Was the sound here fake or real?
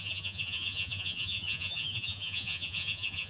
fake